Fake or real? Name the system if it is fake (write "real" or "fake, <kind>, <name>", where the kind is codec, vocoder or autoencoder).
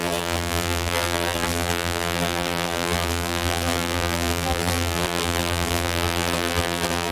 fake, vocoder, BigVGAN v2